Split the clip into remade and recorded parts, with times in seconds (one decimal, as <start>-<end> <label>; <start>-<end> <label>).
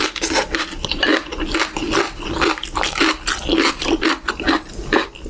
0.0-5.3 recorded